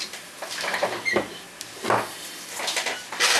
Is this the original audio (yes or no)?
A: yes